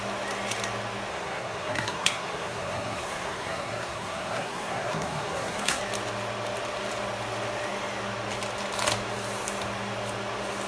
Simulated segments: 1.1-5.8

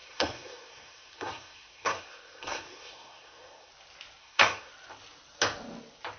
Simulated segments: 0.0-3.7; 4.2-4.7

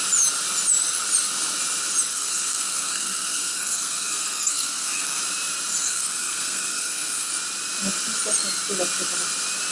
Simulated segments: 2.1-5.2; 5.7-7.3

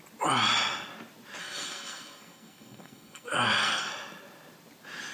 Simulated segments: 1.4-3.9

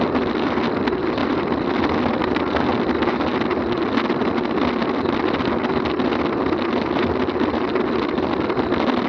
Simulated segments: none

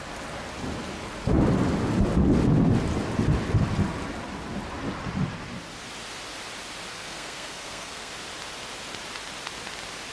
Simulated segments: 6.9-8.1